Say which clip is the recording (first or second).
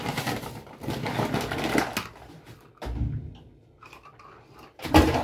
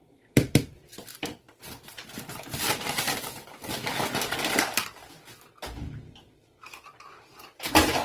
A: first